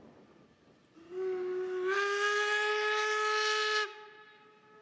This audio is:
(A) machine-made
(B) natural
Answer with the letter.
B